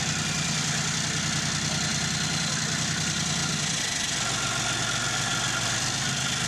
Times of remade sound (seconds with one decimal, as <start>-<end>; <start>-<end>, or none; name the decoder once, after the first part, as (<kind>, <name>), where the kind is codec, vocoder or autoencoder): none